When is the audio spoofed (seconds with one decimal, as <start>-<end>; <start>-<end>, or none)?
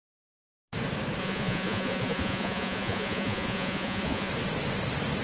1.2-4.3